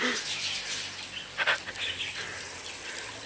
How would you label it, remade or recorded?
recorded